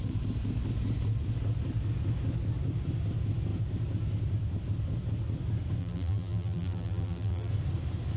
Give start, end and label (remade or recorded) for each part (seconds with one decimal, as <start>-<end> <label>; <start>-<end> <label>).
0.0-5.8 recorded; 5.8-7.5 remade; 7.5-8.2 recorded